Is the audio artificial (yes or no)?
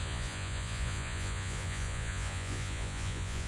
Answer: yes